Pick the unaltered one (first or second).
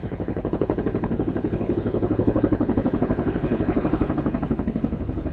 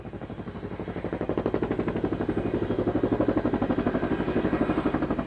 second